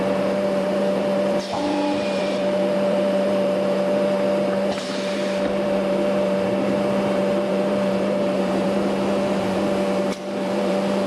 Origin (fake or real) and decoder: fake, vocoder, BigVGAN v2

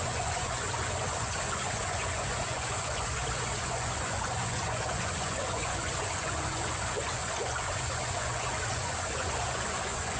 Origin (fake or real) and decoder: fake, vocoder, Vocos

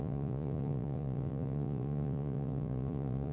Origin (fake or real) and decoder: fake, vocoder, Vocos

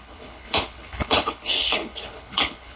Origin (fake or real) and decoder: fake, codec, HILCodec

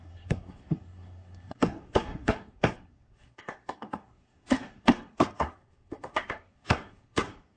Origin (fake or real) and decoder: fake, codec, SNAC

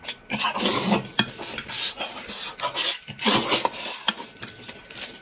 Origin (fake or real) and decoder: real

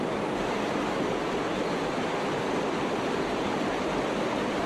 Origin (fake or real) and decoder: real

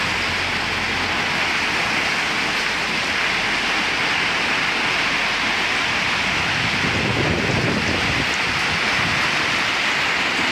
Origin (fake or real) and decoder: real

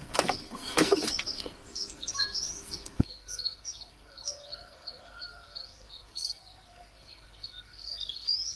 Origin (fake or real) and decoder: fake, codec, SNAC